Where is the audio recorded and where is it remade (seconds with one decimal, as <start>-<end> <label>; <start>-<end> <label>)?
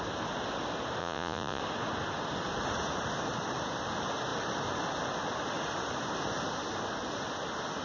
0.0-1.0 recorded; 1.0-1.6 remade; 1.6-7.8 recorded